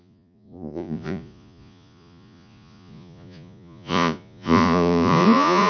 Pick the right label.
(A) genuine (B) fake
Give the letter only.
B